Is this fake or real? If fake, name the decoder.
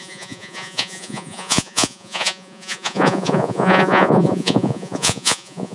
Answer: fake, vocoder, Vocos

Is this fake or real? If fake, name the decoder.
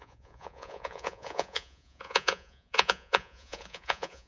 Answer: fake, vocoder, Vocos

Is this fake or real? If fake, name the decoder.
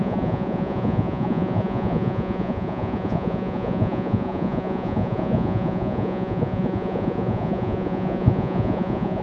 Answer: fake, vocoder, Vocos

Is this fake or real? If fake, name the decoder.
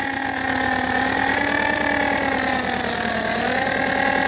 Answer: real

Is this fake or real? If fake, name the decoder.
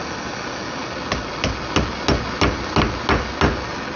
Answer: real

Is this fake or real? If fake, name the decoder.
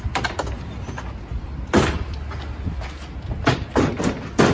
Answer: real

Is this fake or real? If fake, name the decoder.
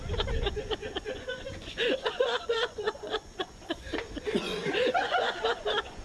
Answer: fake, vocoder, Vocos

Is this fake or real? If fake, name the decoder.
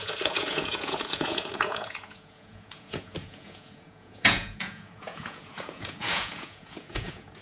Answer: fake, vocoder, Vocos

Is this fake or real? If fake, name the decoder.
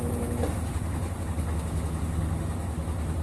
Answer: real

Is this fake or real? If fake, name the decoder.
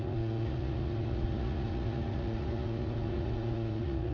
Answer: fake, vocoder, Vocos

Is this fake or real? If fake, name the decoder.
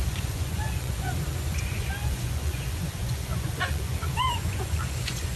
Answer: fake, vocoder, Vocos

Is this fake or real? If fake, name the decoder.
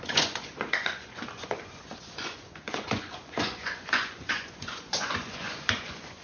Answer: fake, vocoder, Vocos